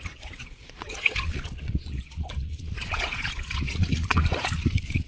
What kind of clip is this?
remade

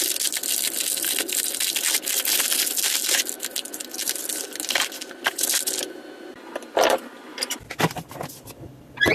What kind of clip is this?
recorded